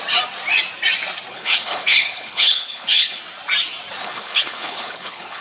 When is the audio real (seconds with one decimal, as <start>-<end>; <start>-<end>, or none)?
0.0-1.3; 3.2-4.0